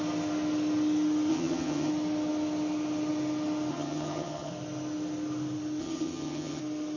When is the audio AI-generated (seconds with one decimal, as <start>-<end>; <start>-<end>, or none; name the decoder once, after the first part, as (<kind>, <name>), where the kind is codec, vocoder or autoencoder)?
1.3-1.9 (vocoder, HiFi-GAN); 3.7-4.5; 5.8-6.6